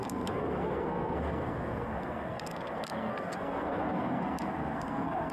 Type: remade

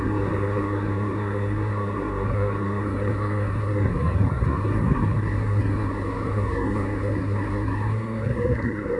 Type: remade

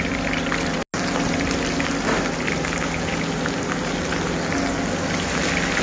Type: recorded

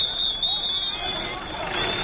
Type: recorded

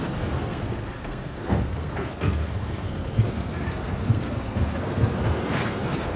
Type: remade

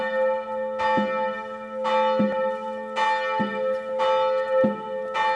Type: recorded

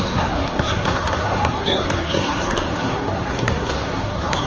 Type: remade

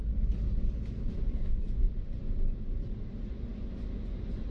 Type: recorded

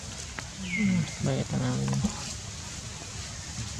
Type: recorded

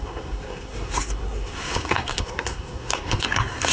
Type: remade